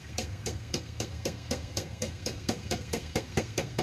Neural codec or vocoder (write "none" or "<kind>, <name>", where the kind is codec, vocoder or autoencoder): codec, SNAC